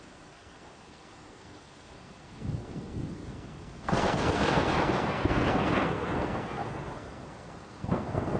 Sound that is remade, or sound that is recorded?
remade